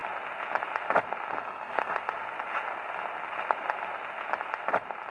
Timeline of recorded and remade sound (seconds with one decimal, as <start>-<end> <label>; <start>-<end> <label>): 0.0-5.1 recorded